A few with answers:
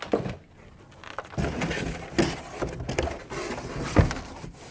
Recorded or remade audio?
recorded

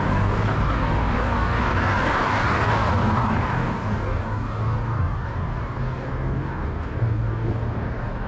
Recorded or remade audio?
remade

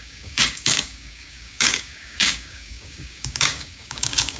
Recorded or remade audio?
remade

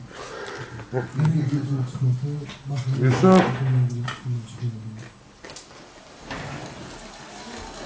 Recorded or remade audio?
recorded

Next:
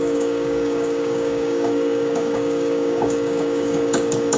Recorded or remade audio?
remade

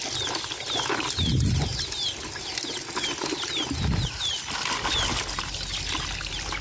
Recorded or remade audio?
recorded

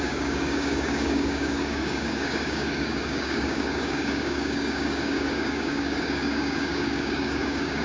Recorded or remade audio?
remade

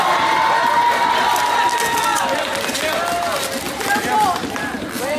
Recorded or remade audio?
recorded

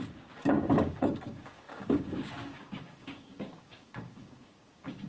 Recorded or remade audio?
remade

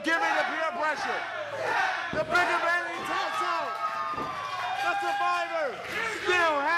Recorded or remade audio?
recorded